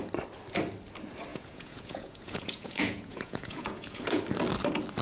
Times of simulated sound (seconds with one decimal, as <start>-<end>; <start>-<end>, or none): 1.3-4.2